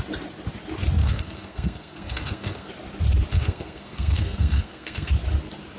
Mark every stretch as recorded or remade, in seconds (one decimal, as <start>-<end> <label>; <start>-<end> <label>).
0.0-1.0 recorded; 1.0-2.7 remade; 2.7-3.3 recorded; 3.3-5.1 remade; 5.1-5.8 recorded

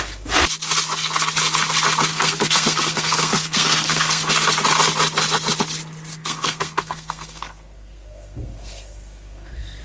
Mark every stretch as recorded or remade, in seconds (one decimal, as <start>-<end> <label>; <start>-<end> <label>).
0.0-2.1 recorded; 2.1-4.3 remade; 4.3-6.1 recorded; 6.1-9.8 remade